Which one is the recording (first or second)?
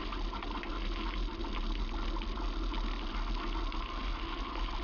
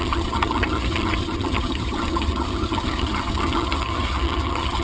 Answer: first